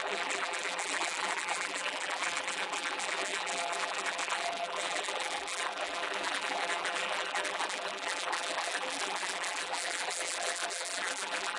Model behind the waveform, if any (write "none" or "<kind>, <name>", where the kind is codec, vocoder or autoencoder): vocoder, BigVGAN v2